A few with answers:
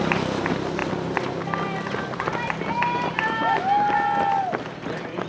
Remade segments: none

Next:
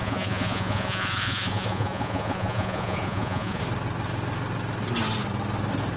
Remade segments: 0.0-3.6 (vocoder, Vocos)

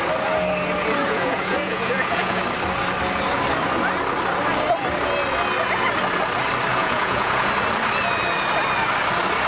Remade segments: 1.0-2.4 (vocoder, Vocos); 6.7-7.5

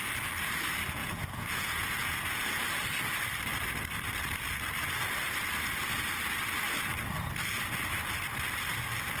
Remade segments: 1.0-2.6 (vocoder, Vocos)

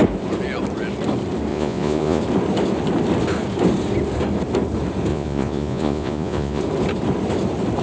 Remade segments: 1.5-2.2 (vocoder, Vocos); 5.1-6.6

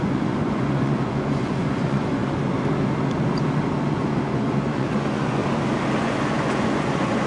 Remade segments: 0.0-2.2 (vocoder, Vocos); 3.9-5.4; 6.0-7.3